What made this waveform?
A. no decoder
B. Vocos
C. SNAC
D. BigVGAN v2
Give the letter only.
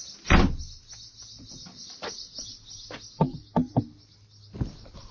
A